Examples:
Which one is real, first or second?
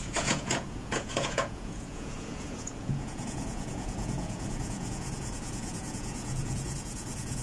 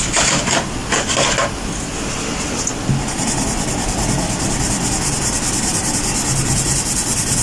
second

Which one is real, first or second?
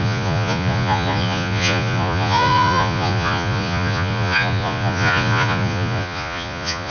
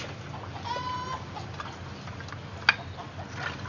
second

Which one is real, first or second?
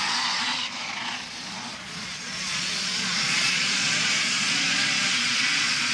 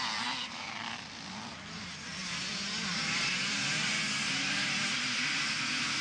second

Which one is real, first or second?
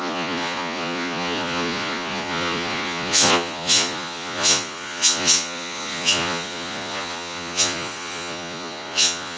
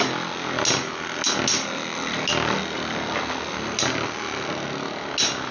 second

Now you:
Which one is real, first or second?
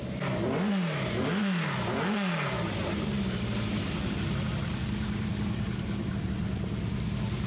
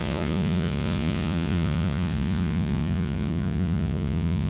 first